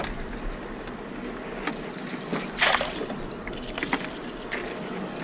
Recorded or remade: recorded